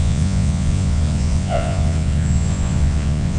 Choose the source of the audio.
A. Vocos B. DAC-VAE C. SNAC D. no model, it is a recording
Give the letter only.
A